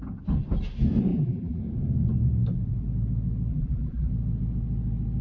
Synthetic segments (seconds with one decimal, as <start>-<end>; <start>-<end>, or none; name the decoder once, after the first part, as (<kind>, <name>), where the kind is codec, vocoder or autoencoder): 1.1-1.6 (vocoder, BigVGAN v2); 3.5-4.1